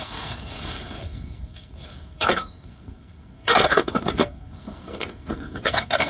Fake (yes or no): yes